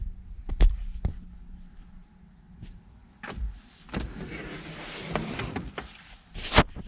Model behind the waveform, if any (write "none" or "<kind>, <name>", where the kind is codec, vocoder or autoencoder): none